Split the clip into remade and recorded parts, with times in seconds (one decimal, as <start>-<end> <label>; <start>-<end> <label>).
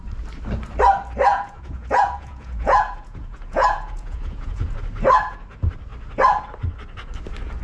0.0-1.3 recorded; 1.3-4.8 remade; 4.8-7.6 recorded